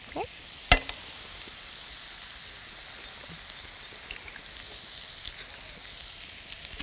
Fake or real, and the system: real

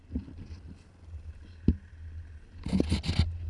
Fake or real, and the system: real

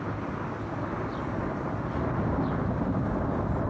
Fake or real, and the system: real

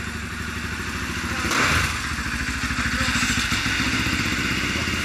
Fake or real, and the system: real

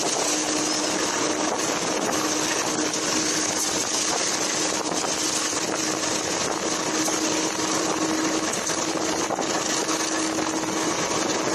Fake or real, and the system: real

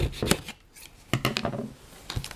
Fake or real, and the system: real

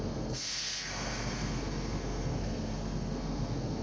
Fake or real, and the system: fake, codec, SNAC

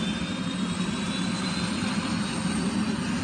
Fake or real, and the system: real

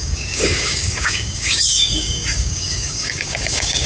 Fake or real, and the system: fake, codec, DAC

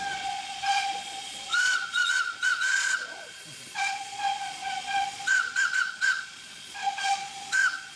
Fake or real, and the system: fake, vocoder, Vocos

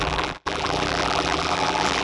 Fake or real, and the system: fake, vocoder, BigVGAN v2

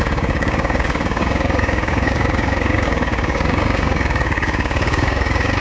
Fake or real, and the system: fake, codec, DAC